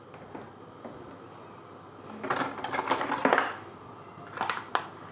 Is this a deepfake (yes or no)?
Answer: no